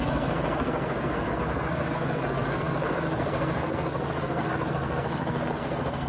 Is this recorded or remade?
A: remade